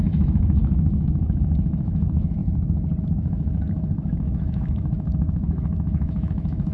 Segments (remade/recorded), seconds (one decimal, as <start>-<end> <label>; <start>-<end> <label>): 0.0-2.4 remade; 2.4-3.0 recorded; 3.0-6.7 remade